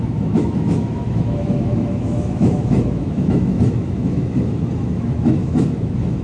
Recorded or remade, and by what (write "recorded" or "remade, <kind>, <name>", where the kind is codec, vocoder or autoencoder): remade, autoencoder, DAC-VAE